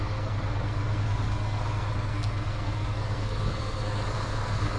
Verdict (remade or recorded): remade